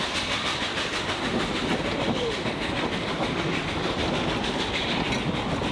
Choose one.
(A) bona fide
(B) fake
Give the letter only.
A